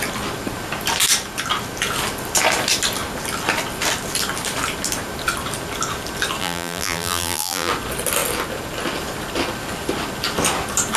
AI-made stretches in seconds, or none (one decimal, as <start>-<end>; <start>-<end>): 6.4-7.7